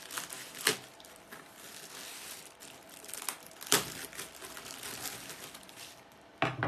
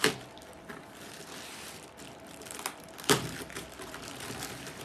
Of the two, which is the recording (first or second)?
first